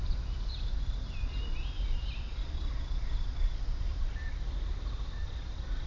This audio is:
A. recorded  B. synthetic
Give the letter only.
A